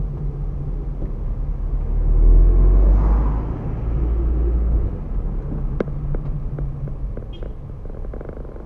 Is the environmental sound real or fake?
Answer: real